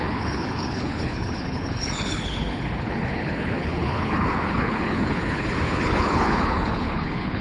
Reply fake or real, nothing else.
fake